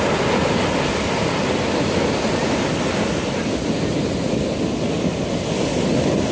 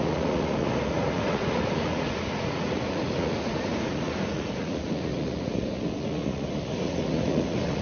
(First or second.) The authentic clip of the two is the first